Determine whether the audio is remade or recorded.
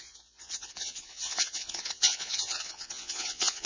remade